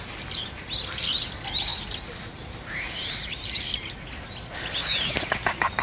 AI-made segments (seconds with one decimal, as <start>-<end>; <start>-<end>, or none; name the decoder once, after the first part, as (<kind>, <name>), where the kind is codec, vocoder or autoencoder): none